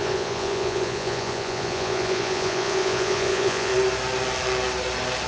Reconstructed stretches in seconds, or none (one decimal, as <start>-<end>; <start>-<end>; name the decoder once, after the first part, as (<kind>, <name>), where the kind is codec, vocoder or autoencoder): 0.0-3.7 (vocoder, Vocos)